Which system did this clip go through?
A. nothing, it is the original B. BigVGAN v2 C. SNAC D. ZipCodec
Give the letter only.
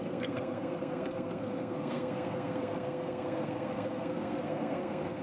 C